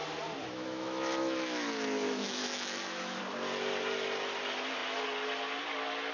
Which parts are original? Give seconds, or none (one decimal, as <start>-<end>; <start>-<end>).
0.0-0.4; 3.2-6.1